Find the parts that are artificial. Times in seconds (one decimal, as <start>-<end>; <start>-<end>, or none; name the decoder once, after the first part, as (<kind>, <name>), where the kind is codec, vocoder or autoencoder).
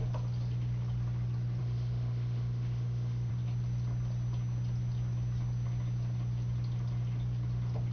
1.6-3.3 (autoencoder, DAC-VAE)